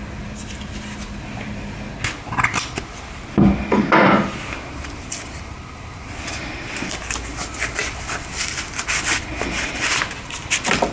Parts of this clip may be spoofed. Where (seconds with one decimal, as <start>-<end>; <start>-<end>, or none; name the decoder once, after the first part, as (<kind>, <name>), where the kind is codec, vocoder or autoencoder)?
none